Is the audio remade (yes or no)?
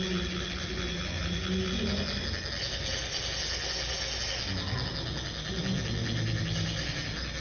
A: no